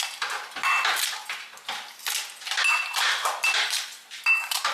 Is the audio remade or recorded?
recorded